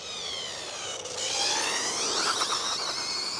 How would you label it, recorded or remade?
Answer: recorded